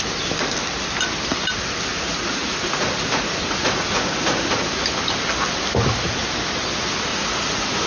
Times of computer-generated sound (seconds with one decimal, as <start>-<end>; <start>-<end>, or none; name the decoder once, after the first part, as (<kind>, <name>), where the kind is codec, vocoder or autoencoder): 1.9-4.8 (vocoder, Vocos); 7.1-7.9